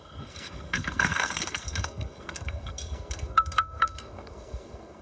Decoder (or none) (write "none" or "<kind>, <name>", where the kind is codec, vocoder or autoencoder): codec, SNAC